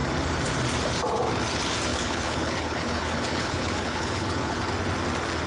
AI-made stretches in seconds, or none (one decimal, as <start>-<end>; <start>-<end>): 1.9-4.7